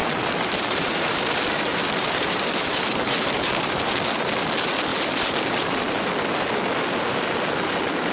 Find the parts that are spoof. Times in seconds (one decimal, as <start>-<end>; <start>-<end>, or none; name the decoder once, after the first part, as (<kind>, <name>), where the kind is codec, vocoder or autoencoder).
0.0-1.2 (vocoder, BigVGAN v2); 1.7-4.1; 4.9-6.1